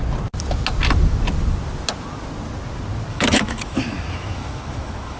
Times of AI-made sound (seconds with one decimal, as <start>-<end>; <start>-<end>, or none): 3.1-5.2